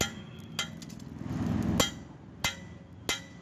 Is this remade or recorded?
recorded